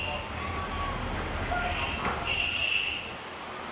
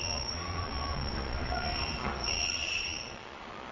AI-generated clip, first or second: second